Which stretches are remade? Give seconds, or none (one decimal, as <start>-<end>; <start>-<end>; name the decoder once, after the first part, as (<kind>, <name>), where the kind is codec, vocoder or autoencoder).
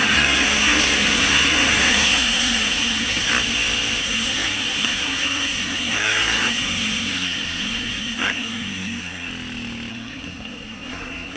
0.0-3.3 (codec, SNAC); 4.0-9.3; 9.9-11.4